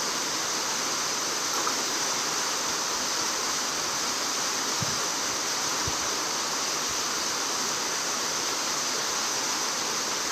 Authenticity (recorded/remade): recorded